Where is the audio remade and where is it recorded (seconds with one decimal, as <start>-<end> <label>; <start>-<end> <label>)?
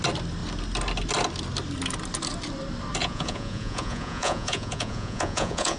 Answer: 0.0-3.0 recorded; 3.0-5.8 remade